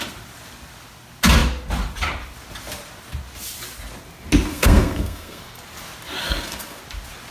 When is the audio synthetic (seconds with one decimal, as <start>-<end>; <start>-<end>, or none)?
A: 4.5-5.4; 6.2-6.8